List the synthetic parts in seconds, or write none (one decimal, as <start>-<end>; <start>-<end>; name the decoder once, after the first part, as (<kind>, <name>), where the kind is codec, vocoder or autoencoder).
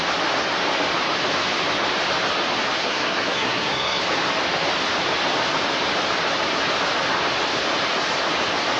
2.8-4.0 (codec, SNAC)